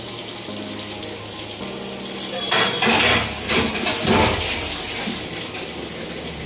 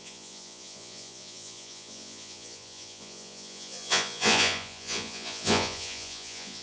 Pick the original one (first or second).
first